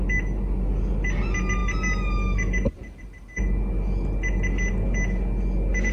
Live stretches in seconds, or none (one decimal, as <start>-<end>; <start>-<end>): 0.0-5.9